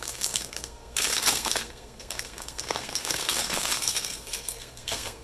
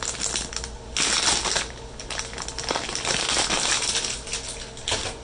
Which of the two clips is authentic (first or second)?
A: second